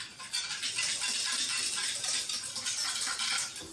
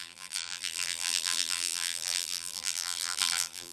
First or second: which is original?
first